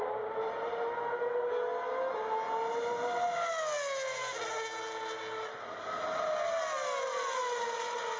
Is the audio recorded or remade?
recorded